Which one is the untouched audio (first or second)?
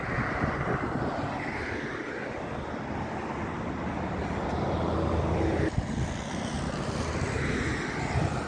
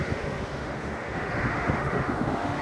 first